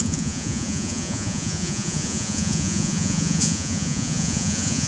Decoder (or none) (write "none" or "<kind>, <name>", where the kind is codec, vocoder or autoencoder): vocoder, Vocos